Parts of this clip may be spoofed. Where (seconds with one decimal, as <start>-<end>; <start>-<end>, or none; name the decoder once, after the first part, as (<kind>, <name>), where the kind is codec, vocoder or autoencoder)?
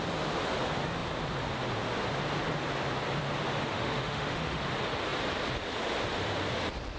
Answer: 3.7-4.6 (autoencoder, DAC-VAE)